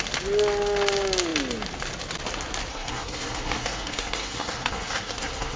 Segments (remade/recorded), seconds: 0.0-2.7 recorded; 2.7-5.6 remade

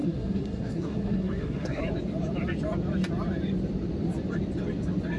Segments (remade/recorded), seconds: 0.0-1.8 remade; 1.8-5.2 recorded

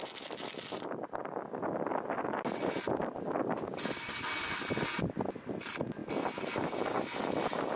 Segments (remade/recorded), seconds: 0.0-6.0 recorded; 6.0-7.8 remade

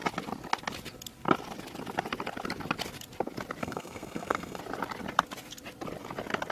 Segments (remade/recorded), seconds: 0.0-3.6 recorded; 3.6-4.6 remade; 4.6-6.5 recorded

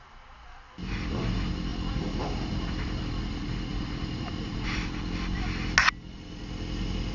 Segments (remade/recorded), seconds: 0.0-1.7 recorded; 1.7-3.1 remade; 3.1-3.7 recorded; 3.7-4.3 remade; 4.3-7.1 recorded